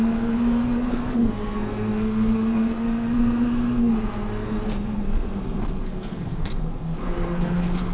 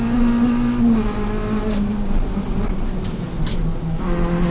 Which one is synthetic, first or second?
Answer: first